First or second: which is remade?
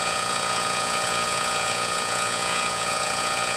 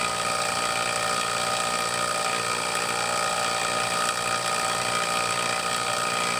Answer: first